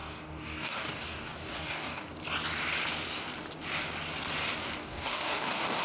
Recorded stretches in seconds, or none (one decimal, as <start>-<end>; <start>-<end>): 2.1-4.8